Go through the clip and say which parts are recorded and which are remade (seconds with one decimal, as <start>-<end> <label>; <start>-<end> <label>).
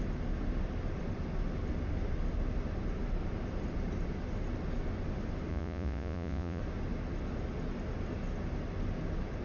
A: 0.0-5.5 recorded; 5.5-6.6 remade; 6.6-9.4 recorded